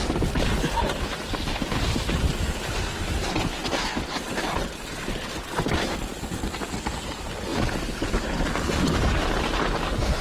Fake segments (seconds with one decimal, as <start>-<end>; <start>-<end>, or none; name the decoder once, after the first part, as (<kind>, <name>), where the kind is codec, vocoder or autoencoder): none